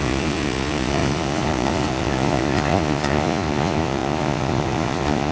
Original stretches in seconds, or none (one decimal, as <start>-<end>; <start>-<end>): none